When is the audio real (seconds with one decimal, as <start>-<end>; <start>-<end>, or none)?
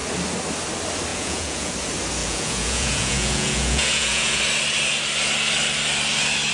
0.0-1.1; 1.7-2.2; 4.4-6.5